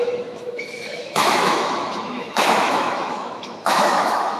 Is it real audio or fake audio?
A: fake